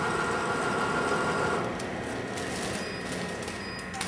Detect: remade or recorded recorded